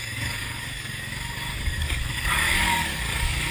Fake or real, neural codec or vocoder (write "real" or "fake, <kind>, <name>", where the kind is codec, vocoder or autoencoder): fake, codec, DAC